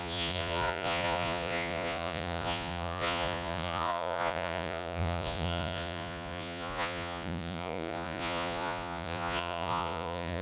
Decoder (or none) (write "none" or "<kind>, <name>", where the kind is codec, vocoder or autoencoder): vocoder, Vocos